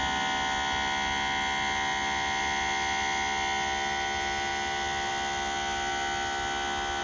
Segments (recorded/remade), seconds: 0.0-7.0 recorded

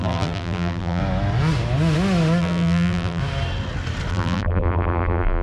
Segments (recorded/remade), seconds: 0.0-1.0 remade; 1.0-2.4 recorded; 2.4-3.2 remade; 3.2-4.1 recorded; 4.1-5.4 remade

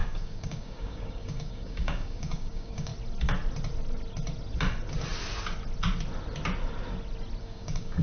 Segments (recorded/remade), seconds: 0.0-2.9 remade; 2.9-7.4 recorded; 7.4-8.0 remade

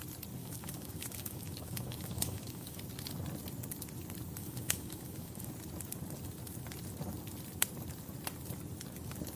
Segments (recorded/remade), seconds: 0.0-0.4 recorded; 0.4-2.8 remade; 2.8-4.4 recorded; 4.4-5.5 remade; 5.5-9.4 recorded

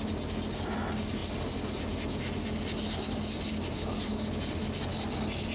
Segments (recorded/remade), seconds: 0.0-5.5 recorded

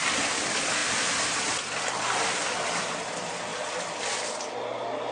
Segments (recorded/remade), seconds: 0.0-5.1 recorded

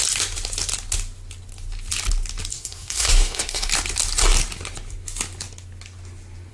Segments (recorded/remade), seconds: 0.0-2.5 recorded; 2.5-3.7 remade; 3.7-6.5 recorded

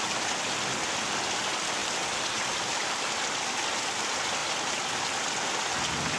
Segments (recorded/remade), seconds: 0.0-1.8 recorded; 1.8-3.1 remade; 3.1-4.4 recorded; 4.4-5.0 remade; 5.0-6.2 recorded